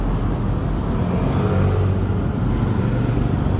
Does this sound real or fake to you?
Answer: real